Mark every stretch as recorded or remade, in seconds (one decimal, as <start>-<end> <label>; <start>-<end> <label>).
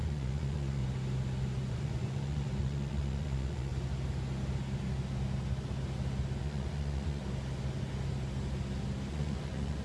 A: 0.0-0.8 remade; 0.8-1.7 recorded; 1.7-3.7 remade; 3.7-6.4 recorded; 6.4-7.2 remade; 7.2-9.1 recorded; 9.1-9.8 remade